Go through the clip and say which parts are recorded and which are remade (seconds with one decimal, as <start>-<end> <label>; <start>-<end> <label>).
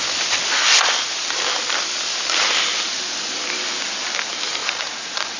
0.0-4.6 recorded; 4.6-5.4 remade